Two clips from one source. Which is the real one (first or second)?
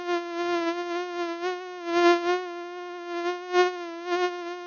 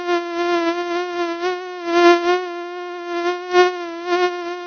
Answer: second